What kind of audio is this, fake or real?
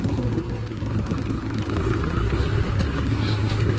fake